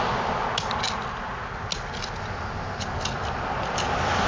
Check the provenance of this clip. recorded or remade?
recorded